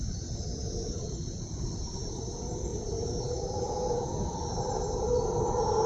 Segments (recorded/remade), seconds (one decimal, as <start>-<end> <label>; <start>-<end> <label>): 0.0-5.9 remade